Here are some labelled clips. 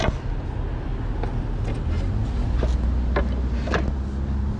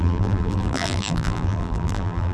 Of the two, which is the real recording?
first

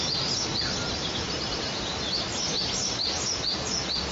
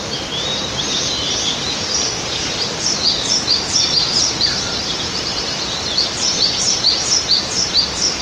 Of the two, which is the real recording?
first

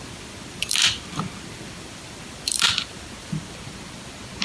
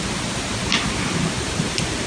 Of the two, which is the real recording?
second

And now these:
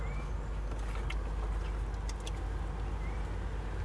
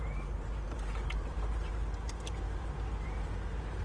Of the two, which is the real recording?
first